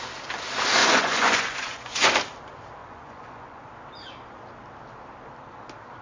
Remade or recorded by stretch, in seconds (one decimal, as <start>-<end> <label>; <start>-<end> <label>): 0.0-0.8 recorded; 0.8-2.1 remade; 2.1-2.8 recorded; 2.8-3.7 remade; 3.7-6.0 recorded